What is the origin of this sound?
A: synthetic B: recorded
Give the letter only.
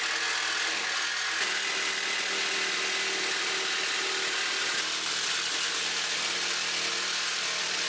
B